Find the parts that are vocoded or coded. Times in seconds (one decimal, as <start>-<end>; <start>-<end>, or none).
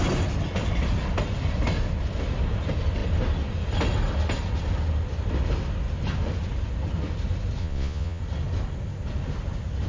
7.6-8.2